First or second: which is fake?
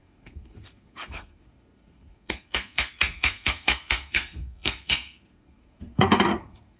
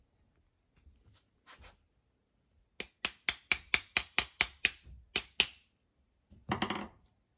first